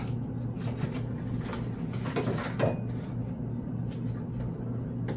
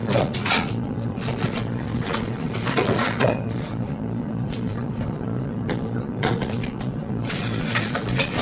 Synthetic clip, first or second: second